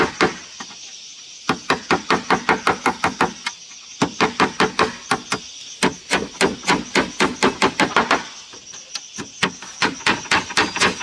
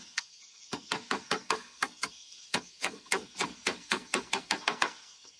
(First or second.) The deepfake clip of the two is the second